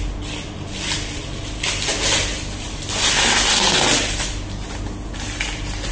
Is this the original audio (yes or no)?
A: yes